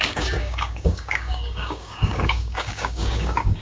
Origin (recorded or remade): remade